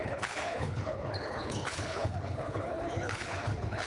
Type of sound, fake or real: fake